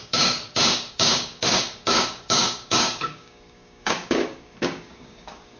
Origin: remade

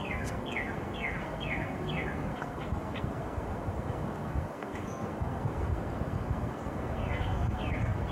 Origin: remade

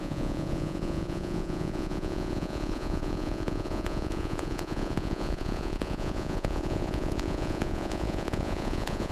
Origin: remade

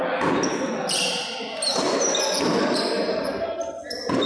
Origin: recorded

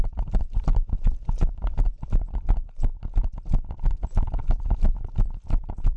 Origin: recorded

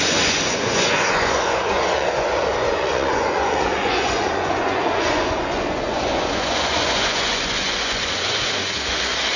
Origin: remade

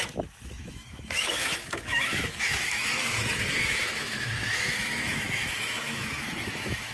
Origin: remade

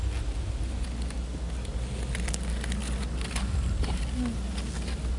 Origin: recorded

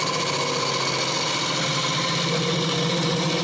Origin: recorded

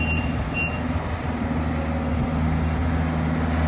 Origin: recorded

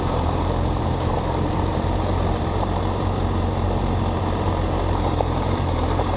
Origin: remade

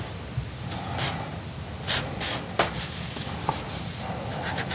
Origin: recorded